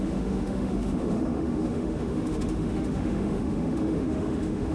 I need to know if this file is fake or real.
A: fake